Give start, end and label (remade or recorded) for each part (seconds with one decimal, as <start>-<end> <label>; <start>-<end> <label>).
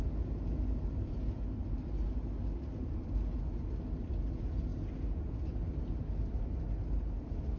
0.0-7.6 recorded